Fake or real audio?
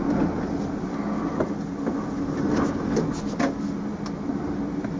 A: real